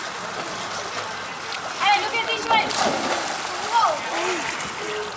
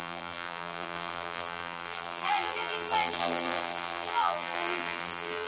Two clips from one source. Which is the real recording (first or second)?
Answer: first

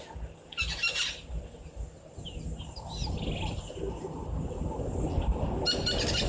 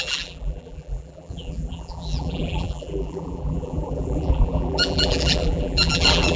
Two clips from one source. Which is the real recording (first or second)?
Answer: first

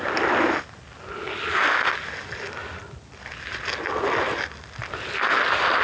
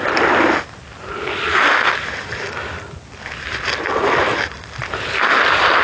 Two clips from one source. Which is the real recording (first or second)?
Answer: first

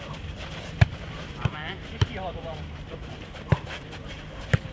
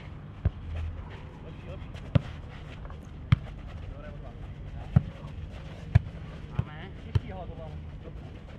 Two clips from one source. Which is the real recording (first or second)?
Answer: second